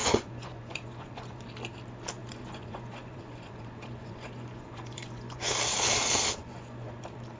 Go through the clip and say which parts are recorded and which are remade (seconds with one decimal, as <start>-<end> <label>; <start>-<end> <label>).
0.0-1.4 remade; 1.4-2.2 recorded; 2.2-5.5 remade; 5.5-6.4 recorded; 6.4-7.0 remade; 7.0-7.4 recorded